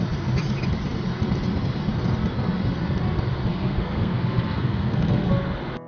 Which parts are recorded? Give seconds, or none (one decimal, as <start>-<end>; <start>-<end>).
0.0-3.5; 5.3-5.9